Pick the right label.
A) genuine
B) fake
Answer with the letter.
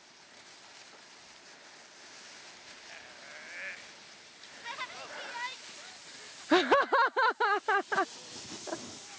A